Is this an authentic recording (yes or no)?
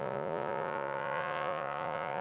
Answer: no